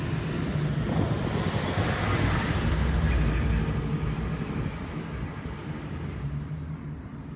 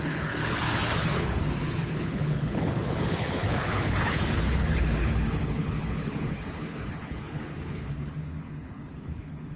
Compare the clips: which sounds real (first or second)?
first